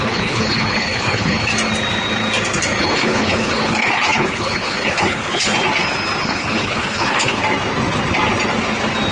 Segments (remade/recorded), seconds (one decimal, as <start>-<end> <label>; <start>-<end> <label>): 0.0-1.5 remade; 1.5-2.8 recorded; 2.8-5.5 remade; 5.5-6.2 recorded; 6.2-7.4 remade; 7.4-9.1 recorded